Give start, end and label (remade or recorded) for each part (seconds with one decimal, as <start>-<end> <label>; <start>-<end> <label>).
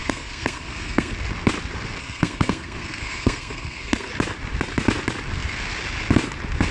0.0-1.1 remade; 1.1-2.0 recorded; 2.0-4.1 remade; 4.1-6.7 recorded